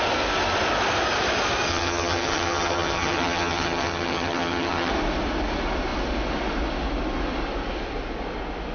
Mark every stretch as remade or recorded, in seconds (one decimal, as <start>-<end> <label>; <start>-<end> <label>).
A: 0.0-1.7 recorded; 1.7-4.9 remade; 4.9-8.7 recorded